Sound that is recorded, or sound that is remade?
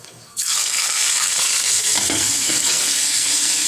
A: remade